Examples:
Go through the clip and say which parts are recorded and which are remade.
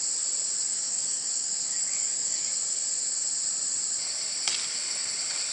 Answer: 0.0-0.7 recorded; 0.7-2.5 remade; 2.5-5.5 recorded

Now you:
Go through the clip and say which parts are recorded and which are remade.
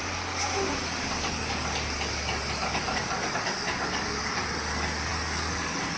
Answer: 0.0-0.4 remade; 0.4-1.2 recorded; 1.2-6.0 remade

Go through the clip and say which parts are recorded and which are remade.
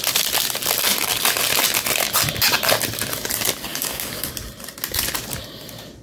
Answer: 0.0-3.7 recorded; 3.7-4.3 remade; 4.3-6.0 recorded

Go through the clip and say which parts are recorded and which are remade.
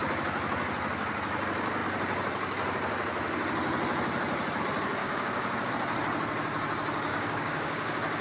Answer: 0.0-5.0 recorded; 5.0-5.7 remade; 5.7-7.1 recorded; 7.1-8.2 remade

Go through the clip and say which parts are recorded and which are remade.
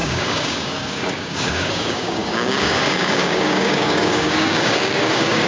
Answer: 0.0-5.5 remade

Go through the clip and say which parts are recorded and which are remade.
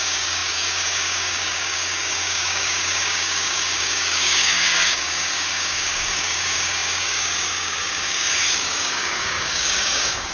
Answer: 0.0-10.3 remade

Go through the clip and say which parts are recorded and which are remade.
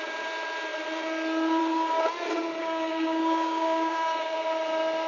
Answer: 0.0-2.6 recorded; 2.6-4.4 remade; 4.4-5.1 recorded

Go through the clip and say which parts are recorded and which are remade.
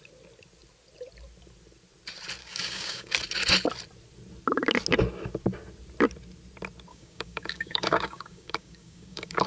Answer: 0.0-2.4 recorded; 2.4-3.1 remade; 3.1-6.9 recorded; 6.9-9.5 remade